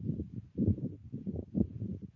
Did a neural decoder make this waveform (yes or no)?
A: no